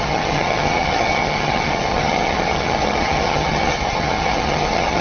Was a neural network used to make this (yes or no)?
yes